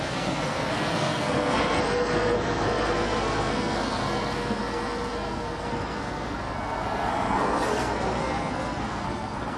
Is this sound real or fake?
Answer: fake